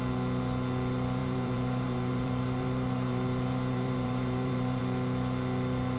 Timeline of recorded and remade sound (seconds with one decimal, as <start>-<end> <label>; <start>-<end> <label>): 0.0-1.2 recorded; 1.2-4.8 remade; 4.8-6.0 recorded